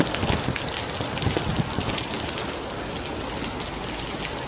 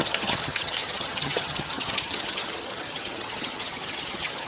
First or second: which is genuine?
first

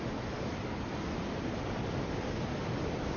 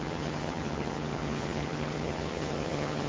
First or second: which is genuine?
first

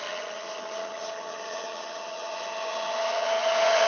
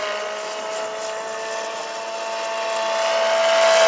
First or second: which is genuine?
second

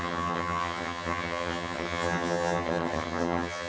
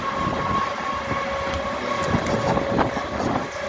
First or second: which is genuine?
second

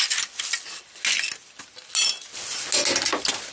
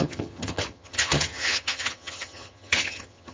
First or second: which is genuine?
first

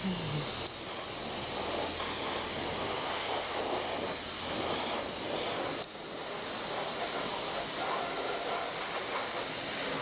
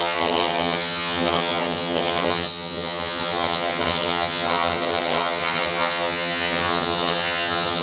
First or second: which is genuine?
first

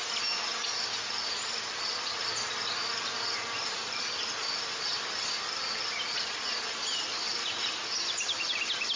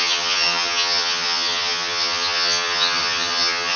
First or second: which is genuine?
first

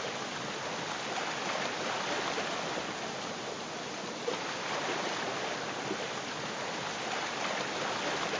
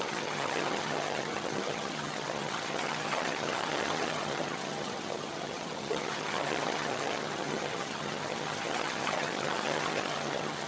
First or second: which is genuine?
first